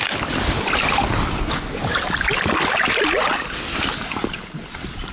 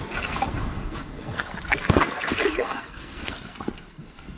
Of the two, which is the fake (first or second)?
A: second